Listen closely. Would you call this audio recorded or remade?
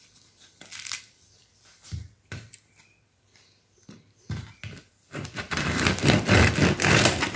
remade